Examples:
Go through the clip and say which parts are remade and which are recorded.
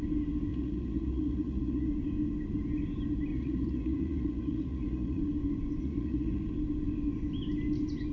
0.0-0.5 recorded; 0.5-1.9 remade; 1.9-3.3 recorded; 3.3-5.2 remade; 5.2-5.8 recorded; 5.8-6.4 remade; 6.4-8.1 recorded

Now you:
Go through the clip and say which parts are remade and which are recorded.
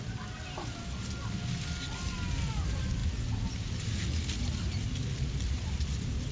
0.0-6.3 recorded